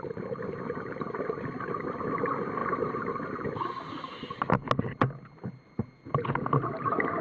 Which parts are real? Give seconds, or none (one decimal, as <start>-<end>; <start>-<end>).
0.0-7.2